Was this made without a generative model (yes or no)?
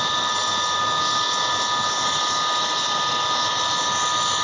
yes